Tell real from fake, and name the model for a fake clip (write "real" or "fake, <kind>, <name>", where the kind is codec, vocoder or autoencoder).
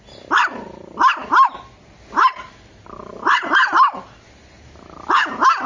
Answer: real